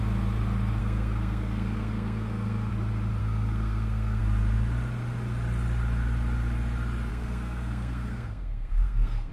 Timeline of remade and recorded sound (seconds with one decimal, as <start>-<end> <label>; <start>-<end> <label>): 0.0-0.8 recorded; 0.8-2.7 remade; 2.7-3.2 recorded; 3.2-4.2 remade; 4.2-7.1 recorded; 7.1-9.3 remade